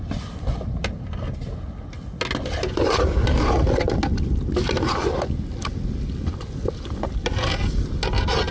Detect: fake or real real